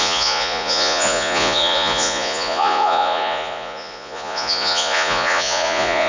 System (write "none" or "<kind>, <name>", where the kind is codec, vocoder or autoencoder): vocoder, Vocos